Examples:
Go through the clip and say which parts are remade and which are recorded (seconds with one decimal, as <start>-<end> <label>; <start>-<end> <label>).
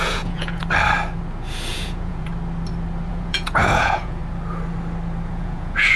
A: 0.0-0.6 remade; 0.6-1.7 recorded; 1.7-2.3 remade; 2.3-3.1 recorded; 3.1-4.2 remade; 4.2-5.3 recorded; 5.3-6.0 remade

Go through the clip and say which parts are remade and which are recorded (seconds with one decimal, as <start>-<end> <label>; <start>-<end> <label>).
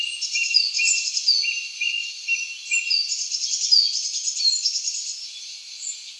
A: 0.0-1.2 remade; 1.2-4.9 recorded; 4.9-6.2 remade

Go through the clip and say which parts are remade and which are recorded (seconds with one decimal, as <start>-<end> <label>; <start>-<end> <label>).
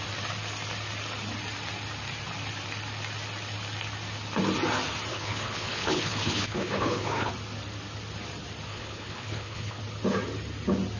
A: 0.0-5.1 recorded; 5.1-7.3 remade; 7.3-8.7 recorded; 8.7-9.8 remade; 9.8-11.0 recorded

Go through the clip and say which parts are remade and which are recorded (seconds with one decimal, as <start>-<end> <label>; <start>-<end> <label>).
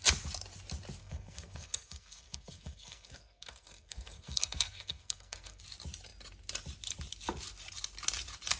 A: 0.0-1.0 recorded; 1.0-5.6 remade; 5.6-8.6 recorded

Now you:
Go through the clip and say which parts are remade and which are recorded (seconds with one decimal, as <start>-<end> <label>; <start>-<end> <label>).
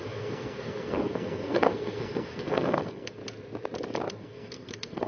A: 0.0-3.2 remade; 3.2-4.1 recorded; 4.1-5.1 remade